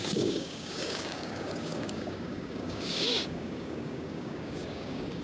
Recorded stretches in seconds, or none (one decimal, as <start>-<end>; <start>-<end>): none